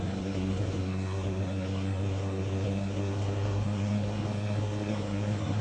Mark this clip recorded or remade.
remade